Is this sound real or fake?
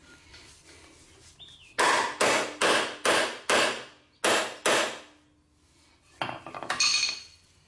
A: real